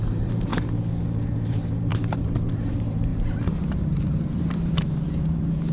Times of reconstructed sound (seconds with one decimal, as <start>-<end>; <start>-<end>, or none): 0.0-0.5; 1.3-5.7